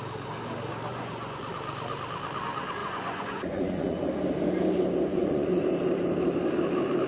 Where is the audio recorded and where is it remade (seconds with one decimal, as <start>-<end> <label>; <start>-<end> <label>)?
0.0-0.9 recorded; 0.9-1.4 remade; 1.4-2.8 recorded; 2.8-4.1 remade; 4.1-5.1 recorded; 5.1-5.6 remade; 5.6-7.1 recorded